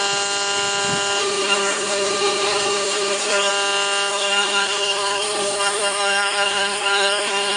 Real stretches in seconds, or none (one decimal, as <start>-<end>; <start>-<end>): 0.0-1.2; 3.5-4.1